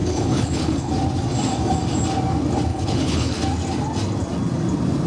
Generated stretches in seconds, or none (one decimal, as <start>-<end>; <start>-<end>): 0.0-0.9; 2.7-3.4